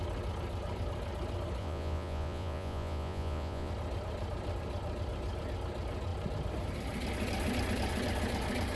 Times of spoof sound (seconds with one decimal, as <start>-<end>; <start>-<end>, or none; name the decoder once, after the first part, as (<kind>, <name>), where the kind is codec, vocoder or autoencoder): 1.6-3.7 (vocoder, Vocos)